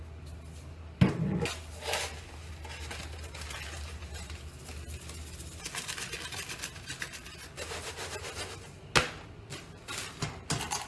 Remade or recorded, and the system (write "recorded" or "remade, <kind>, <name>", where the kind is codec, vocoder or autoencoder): recorded